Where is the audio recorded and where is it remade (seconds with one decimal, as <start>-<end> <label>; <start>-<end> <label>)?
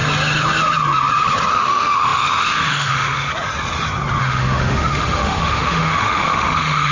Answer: 0.0-1.5 recorded; 1.5-3.3 remade; 3.3-4.2 recorded; 4.2-6.9 remade